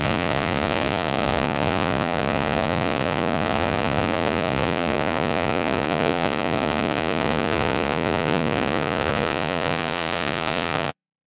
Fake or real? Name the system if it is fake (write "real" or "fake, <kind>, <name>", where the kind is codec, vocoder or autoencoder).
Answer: fake, vocoder, Vocos